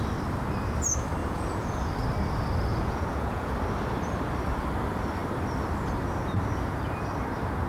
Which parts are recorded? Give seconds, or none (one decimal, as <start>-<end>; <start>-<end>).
0.0-1.2; 1.9-2.7; 3.5-7.7